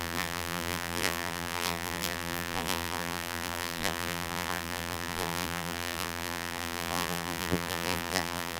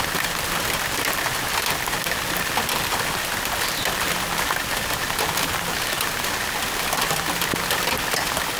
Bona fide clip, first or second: second